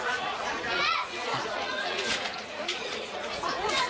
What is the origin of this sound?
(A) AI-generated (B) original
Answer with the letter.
A